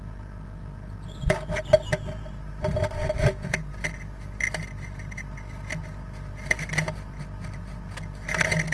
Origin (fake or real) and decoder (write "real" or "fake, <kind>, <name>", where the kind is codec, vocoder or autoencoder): real